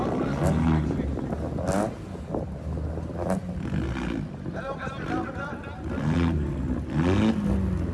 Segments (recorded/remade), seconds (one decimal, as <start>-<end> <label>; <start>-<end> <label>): 0.0-7.9 recorded